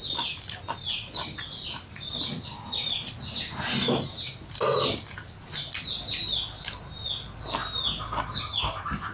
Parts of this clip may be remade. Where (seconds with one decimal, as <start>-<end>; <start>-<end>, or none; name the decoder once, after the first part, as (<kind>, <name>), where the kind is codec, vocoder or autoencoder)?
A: none